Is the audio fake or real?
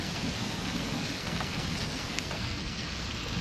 fake